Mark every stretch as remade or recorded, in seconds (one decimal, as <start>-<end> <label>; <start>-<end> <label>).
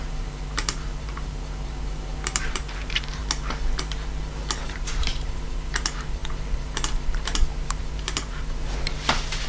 0.0-3.2 remade; 3.2-4.6 recorded; 4.6-9.5 remade